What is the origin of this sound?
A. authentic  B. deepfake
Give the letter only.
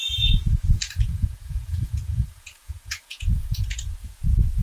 B